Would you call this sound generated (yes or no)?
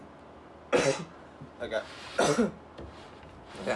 no